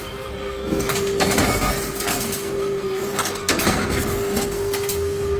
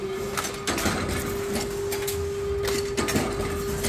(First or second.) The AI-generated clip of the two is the first